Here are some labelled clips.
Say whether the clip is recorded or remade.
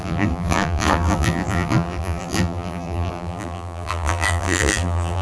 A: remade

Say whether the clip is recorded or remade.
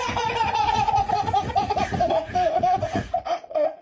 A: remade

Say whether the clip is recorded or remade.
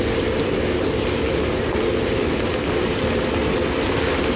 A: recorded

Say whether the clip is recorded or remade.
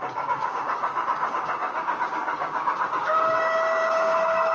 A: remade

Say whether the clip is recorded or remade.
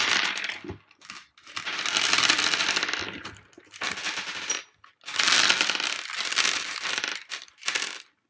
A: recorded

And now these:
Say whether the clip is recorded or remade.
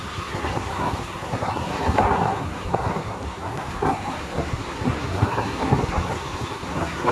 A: remade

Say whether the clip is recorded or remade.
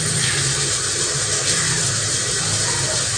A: recorded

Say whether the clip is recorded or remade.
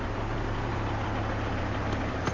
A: remade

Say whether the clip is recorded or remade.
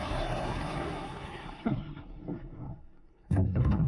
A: remade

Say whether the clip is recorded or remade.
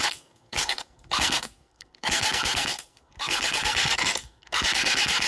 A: remade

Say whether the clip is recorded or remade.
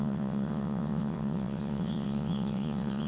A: remade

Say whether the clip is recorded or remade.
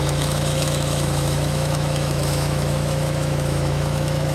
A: remade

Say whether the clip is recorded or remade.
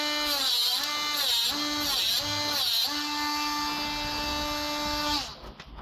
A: recorded